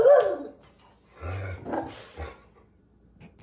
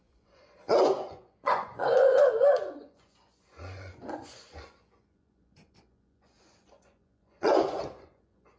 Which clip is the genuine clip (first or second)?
first